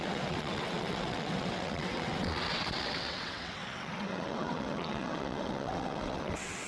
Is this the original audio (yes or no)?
no